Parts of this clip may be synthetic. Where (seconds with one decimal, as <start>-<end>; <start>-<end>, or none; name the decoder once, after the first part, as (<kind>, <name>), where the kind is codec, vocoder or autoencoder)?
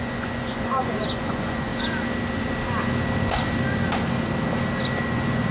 0.0-1.7 (vocoder, Vocos); 5.0-5.5